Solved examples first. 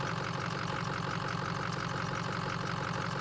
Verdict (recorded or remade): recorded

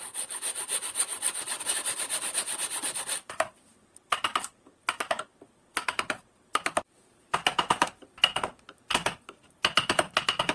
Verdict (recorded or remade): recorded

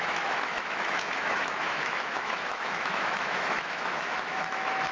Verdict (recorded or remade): remade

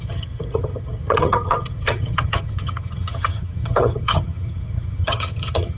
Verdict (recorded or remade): remade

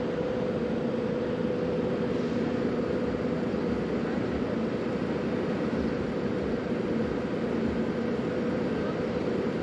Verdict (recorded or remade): recorded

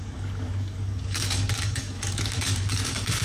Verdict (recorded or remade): remade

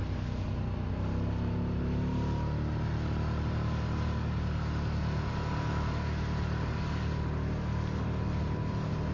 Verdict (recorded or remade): recorded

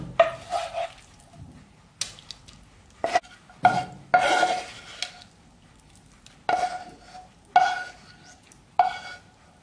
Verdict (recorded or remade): recorded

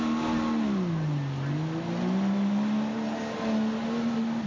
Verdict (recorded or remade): recorded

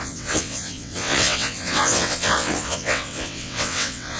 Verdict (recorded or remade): remade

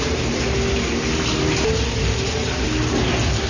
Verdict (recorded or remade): recorded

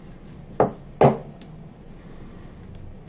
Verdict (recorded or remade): recorded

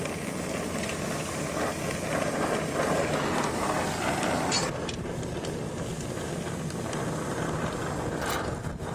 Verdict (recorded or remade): recorded